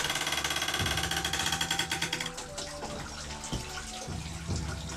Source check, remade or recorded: recorded